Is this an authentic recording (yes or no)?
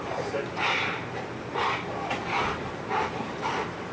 no